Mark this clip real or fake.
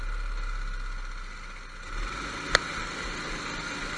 real